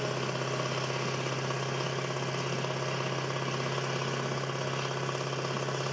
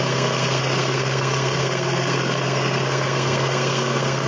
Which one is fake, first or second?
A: second